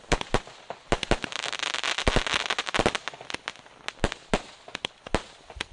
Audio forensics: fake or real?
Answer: real